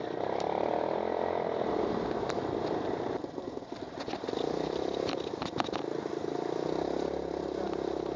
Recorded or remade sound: recorded